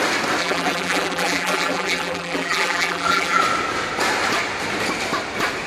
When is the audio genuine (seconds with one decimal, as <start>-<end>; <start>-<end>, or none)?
0.0-0.4; 3.4-5.7